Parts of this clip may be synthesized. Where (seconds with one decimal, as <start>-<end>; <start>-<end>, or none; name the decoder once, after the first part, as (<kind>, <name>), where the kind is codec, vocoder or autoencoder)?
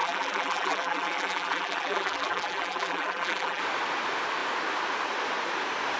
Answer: 0.0-3.6 (vocoder, BigVGAN v2)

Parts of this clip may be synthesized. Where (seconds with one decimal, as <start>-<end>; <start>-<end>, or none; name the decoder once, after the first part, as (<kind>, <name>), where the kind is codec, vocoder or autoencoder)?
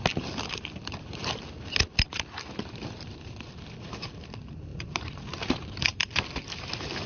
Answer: 4.7-6.0 (vocoder, BigVGAN v2)